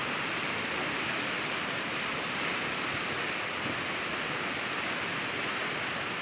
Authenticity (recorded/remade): recorded